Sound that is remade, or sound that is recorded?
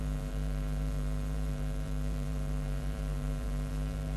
remade